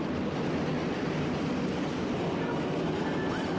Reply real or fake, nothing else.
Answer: real